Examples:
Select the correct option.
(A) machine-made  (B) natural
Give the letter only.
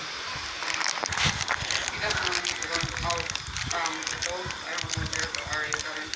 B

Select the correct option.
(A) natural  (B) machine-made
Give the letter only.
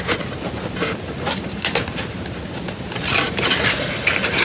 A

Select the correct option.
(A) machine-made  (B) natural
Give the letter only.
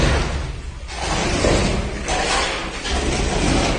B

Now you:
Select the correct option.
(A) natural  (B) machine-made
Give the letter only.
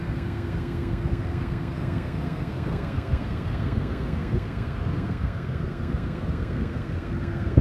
B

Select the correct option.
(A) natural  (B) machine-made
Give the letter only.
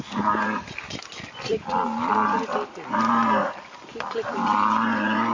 A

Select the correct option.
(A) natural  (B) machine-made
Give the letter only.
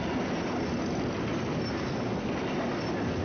A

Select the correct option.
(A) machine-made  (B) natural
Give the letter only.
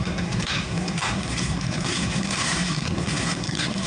A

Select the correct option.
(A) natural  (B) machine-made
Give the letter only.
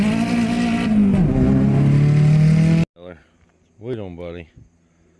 A